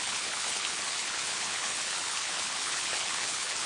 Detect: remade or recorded remade